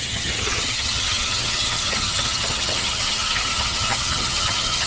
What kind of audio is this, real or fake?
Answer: fake